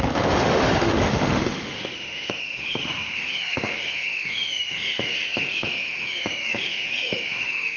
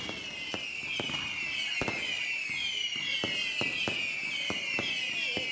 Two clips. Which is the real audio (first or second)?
second